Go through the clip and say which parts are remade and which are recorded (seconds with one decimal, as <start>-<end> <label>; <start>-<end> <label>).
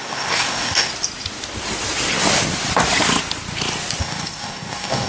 0.0-0.9 remade; 0.9-4.0 recorded; 4.0-5.1 remade